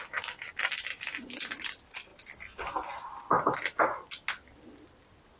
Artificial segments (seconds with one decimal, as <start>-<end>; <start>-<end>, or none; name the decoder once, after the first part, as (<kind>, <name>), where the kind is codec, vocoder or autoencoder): none